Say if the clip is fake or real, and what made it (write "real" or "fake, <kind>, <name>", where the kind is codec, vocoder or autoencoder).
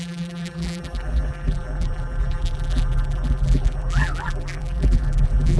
fake, vocoder, BigVGAN v2